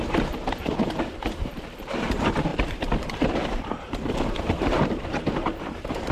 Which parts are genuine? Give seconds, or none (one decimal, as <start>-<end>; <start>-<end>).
none